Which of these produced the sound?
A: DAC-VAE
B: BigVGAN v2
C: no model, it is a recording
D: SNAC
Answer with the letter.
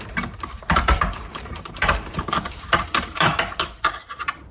B